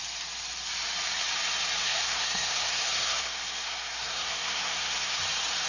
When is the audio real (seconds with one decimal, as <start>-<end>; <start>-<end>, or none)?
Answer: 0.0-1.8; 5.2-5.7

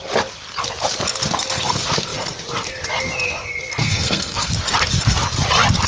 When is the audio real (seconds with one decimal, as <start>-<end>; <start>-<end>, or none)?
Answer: 0.0-3.8; 4.5-5.9

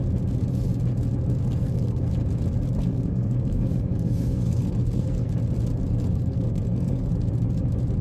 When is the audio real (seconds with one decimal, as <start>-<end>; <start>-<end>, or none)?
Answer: 0.0-1.4; 2.1-2.9; 5.3-5.9; 7.1-8.0

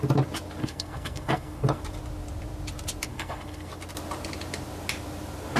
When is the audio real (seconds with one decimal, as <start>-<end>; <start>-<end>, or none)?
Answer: 0.0-0.6; 1.8-3.1; 3.7-5.6

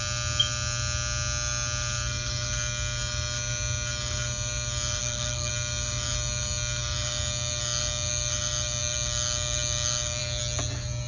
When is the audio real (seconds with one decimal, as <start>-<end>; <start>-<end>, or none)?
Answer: 0.0-5.0; 5.5-11.1

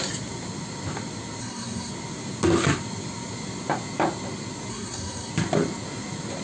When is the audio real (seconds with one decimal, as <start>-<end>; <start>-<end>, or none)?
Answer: 0.0-1.4; 1.9-4.7; 5.3-6.4

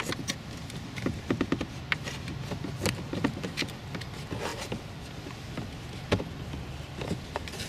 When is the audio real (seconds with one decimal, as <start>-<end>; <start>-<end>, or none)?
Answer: 0.0-7.7